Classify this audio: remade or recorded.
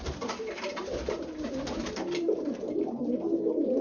recorded